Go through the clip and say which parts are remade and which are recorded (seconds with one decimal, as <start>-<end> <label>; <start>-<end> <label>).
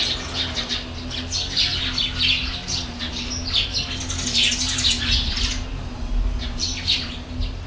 0.0-7.7 recorded